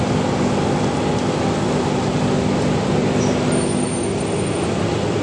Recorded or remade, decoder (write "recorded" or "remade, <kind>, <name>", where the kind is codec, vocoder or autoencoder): recorded